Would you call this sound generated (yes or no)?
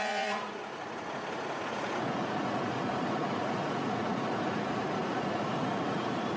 yes